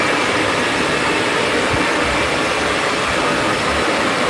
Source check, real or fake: real